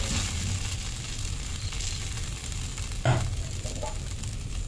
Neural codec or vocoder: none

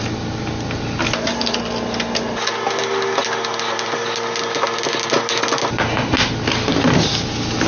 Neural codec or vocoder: none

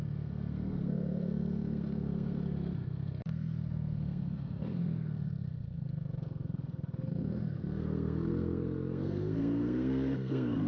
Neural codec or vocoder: codec, SNAC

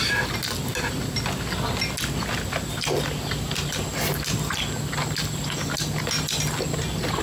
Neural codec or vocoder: none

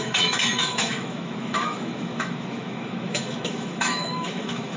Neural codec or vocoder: autoencoder, DAC-VAE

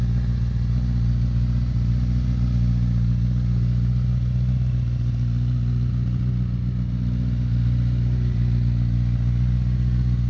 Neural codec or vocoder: none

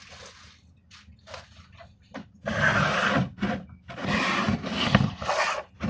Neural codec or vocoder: none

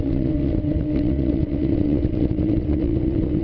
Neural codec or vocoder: vocoder, WaveNeXt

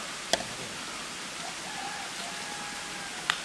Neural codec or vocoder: none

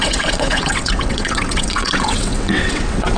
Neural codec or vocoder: vocoder, WaveNeXt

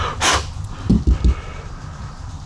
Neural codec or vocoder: none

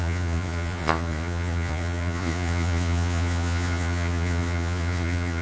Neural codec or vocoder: vocoder, Vocos